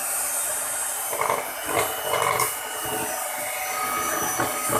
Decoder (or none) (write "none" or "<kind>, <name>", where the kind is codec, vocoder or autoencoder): none